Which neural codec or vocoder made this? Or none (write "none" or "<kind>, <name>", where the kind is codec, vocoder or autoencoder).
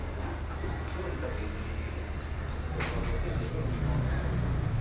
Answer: none